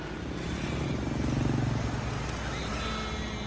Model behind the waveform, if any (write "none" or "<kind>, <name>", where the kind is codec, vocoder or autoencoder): none